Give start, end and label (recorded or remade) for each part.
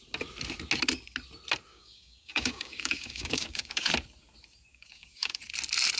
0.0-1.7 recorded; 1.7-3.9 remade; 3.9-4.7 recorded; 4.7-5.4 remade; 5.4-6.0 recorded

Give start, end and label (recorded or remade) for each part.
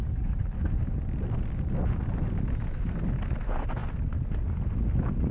0.0-1.0 remade; 1.0-5.3 recorded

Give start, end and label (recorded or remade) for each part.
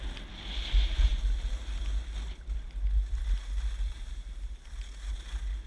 0.0-5.7 recorded